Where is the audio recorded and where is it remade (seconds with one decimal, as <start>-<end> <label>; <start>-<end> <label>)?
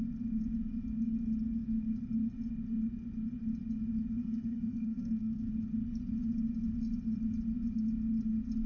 0.0-4.2 recorded; 4.2-5.5 remade; 5.5-8.7 recorded